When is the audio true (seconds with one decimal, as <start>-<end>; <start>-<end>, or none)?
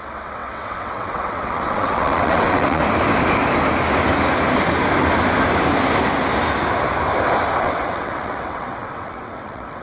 2.8-7.6